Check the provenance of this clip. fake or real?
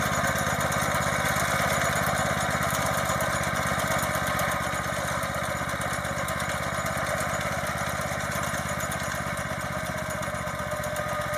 real